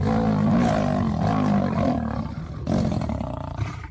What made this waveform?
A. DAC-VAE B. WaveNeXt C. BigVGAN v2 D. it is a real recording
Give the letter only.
D